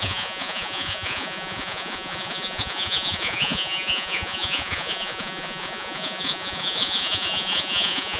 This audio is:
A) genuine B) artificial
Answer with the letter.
B